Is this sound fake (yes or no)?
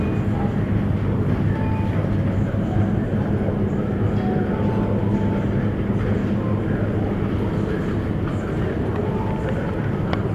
no